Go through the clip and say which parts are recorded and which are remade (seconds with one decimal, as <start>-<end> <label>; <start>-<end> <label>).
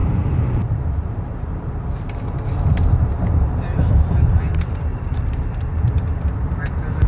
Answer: 0.0-4.1 remade; 4.1-4.9 recorded; 4.9-5.7 remade; 5.7-7.1 recorded